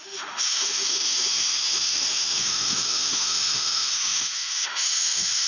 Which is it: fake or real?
fake